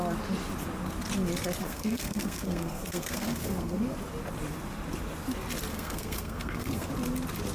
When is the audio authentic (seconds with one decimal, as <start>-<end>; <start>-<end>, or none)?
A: 0.0-1.6; 3.8-5.7; 6.9-7.5